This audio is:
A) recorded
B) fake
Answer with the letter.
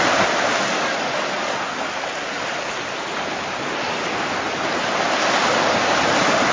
A